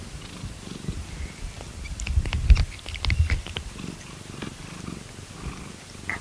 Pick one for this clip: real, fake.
real